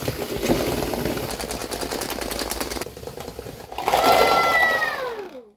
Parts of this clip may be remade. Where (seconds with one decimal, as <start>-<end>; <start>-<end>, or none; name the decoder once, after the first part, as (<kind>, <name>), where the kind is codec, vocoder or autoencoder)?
none